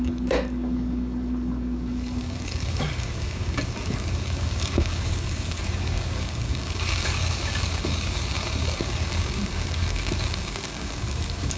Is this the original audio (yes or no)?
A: no